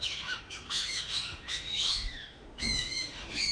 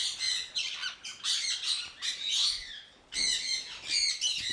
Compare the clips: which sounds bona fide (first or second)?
second